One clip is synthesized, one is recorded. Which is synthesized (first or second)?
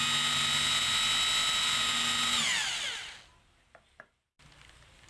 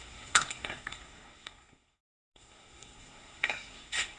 second